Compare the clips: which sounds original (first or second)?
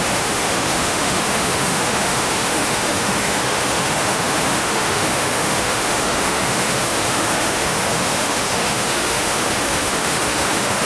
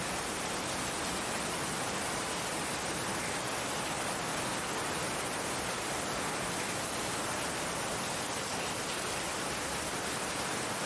second